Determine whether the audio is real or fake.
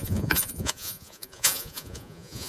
fake